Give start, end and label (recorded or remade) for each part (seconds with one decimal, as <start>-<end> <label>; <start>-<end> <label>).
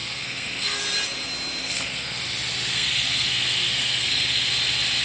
0.0-0.8 remade; 0.8-1.6 recorded; 1.6-2.2 remade; 2.2-2.7 recorded; 2.7-4.5 remade; 4.5-5.0 recorded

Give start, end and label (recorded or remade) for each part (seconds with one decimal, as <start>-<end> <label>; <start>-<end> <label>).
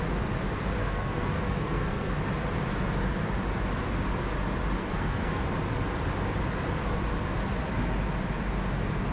0.0-0.8 recorded; 0.8-2.1 remade; 2.1-4.8 recorded; 4.8-5.4 remade; 5.4-9.1 recorded